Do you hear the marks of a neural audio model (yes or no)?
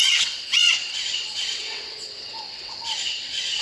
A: yes